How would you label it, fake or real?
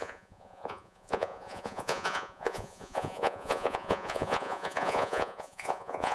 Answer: fake